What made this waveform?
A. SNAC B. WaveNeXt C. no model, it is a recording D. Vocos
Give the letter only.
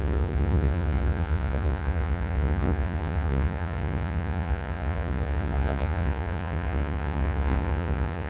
D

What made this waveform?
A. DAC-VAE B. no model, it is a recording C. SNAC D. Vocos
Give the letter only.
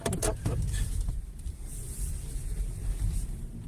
B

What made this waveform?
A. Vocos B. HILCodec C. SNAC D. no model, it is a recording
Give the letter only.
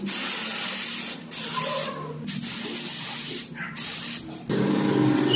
D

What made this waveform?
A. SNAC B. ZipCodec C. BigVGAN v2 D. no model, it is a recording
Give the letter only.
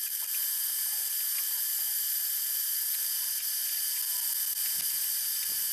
D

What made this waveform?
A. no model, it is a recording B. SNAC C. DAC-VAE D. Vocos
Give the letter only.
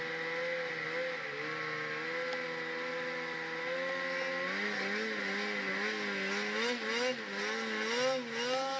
A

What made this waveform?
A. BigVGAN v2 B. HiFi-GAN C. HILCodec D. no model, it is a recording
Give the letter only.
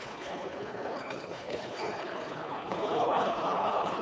C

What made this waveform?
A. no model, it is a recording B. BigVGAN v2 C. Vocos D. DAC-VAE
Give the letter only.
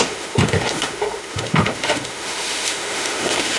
D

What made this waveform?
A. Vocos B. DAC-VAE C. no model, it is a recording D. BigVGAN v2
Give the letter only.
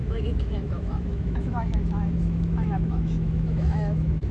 B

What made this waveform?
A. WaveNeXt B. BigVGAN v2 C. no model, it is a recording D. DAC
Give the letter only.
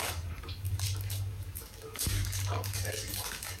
D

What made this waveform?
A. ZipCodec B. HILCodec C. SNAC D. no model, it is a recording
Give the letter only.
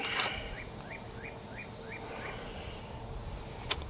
D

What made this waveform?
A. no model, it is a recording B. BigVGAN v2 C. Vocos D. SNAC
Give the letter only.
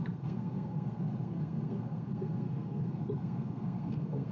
D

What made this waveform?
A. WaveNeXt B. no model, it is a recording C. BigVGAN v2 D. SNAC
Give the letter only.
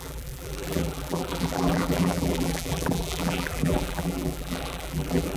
C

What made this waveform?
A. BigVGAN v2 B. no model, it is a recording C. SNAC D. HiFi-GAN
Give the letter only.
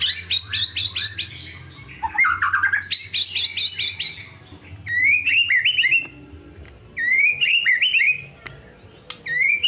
B